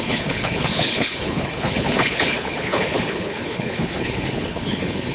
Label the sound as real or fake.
fake